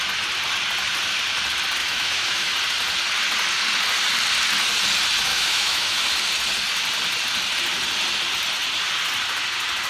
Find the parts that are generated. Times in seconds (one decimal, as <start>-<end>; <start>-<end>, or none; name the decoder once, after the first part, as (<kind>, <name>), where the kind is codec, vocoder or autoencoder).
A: 1.8-2.5 (autoencoder, DAC-VAE); 5.3-6.1